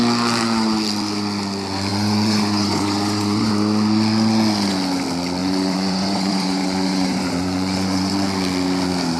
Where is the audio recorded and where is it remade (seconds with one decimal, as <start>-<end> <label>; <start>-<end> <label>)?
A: 0.0-1.9 recorded; 1.9-3.5 remade; 3.5-5.4 recorded; 5.4-8.1 remade; 8.1-9.2 recorded